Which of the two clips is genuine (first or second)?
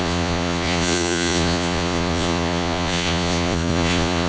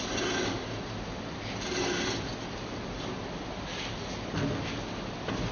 second